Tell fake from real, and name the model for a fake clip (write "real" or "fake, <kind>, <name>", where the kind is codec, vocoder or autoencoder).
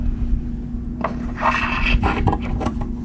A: real